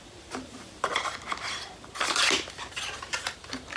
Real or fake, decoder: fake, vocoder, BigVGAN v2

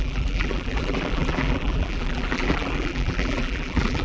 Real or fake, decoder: fake, vocoder, BigVGAN v2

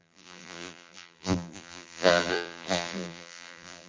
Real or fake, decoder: fake, vocoder, BigVGAN v2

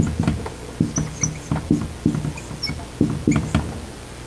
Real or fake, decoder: real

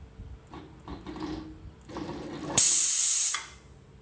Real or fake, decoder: real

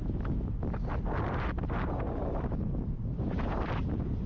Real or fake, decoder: real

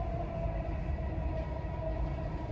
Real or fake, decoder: real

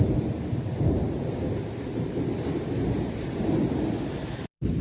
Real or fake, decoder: fake, vocoder, BigVGAN v2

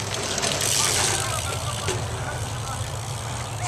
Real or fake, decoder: real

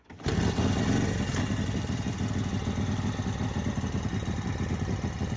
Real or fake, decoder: fake, vocoder, BigVGAN v2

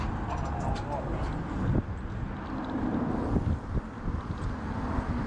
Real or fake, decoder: real